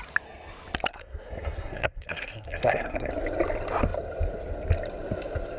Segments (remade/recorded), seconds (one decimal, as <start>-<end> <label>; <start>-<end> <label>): 0.0-0.9 recorded; 0.9-3.1 remade; 3.1-5.6 recorded